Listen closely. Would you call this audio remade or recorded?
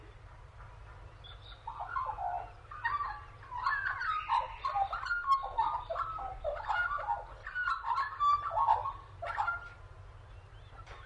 recorded